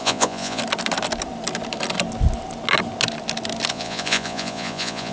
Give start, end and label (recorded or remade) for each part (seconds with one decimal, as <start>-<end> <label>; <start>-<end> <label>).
0.0-0.6 remade; 0.6-3.7 recorded; 3.7-5.1 remade